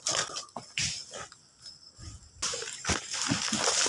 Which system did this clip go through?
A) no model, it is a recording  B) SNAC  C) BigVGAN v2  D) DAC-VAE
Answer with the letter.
A